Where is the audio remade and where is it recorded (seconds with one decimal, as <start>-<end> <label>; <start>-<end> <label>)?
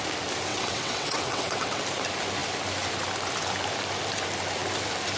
0.0-0.5 recorded; 0.5-1.8 remade; 1.8-5.2 recorded